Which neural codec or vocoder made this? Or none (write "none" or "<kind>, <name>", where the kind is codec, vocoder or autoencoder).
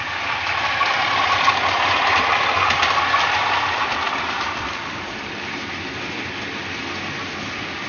none